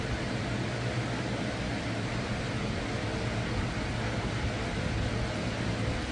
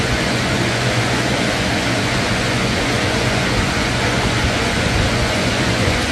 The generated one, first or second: second